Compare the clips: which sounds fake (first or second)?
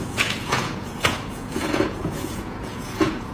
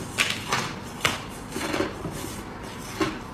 first